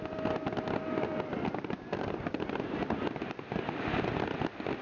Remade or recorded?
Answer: recorded